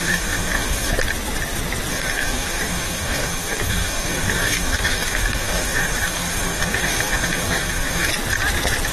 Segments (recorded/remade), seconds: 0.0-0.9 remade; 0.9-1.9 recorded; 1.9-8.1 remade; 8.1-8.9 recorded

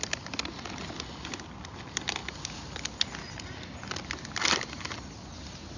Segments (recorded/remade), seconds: 0.0-5.8 recorded

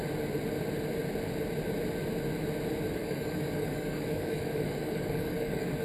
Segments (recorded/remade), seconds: 0.0-3.0 recorded; 3.0-5.8 remade